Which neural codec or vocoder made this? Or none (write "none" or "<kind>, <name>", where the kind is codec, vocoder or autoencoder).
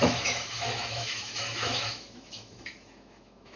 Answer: autoencoder, DAC-VAE